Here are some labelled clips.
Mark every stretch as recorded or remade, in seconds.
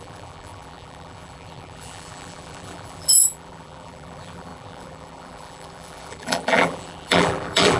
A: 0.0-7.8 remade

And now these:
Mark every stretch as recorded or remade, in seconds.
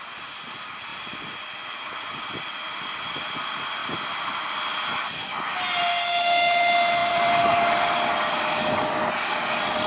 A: 0.0-3.8 recorded; 3.8-4.5 remade; 4.5-7.0 recorded; 7.0-8.3 remade; 8.3-9.9 recorded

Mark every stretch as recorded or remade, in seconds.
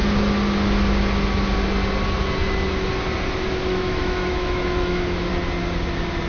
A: 0.0-3.5 recorded; 3.5-5.3 remade; 5.3-6.3 recorded